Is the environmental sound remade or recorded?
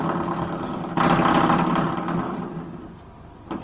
recorded